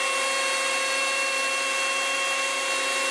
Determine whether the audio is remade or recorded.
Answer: remade